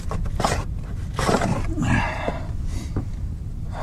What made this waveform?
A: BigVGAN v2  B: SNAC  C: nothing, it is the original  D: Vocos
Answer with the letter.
A